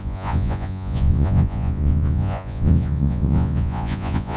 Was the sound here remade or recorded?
remade